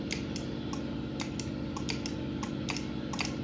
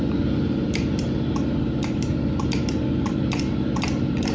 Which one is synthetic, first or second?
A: second